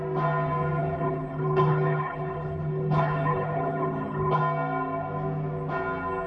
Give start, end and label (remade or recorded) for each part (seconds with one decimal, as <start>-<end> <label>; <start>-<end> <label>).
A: 0.0-0.8 recorded; 0.8-4.4 remade; 4.4-6.3 recorded